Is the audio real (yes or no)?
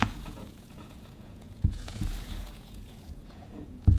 no